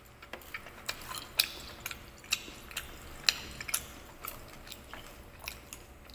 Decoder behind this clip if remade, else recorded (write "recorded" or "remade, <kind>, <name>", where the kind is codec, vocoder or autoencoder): recorded